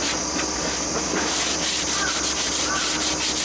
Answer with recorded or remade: recorded